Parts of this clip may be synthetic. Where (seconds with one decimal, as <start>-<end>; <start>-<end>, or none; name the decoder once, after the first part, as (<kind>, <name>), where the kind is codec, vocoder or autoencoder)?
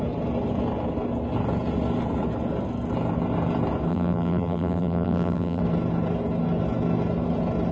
3.9-5.6 (vocoder, BigVGAN v2)